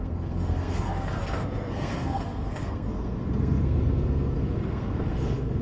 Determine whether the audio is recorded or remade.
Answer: remade